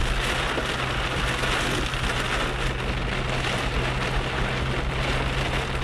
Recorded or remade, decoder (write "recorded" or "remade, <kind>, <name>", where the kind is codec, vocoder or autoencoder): recorded